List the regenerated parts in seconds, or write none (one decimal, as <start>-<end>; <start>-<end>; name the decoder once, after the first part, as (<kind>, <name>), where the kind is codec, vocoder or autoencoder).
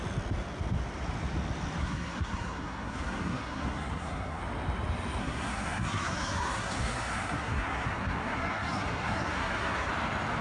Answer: 1.8-4.4 (codec, SNAC); 5.2-9.9